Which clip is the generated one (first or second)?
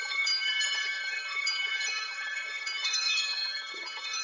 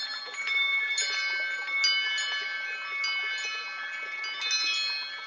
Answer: first